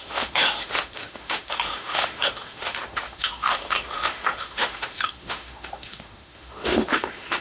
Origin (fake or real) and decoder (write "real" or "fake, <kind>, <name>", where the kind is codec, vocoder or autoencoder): fake, autoencoder, DAC-VAE